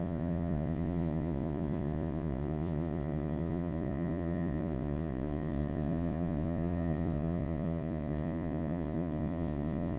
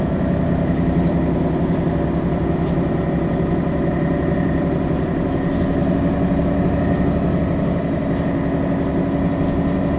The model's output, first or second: first